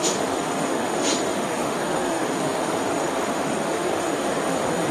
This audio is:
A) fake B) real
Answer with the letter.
A